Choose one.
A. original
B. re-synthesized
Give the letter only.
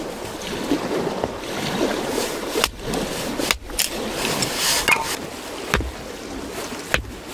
A